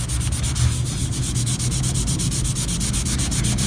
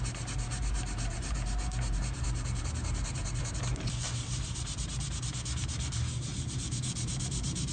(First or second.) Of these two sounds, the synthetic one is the second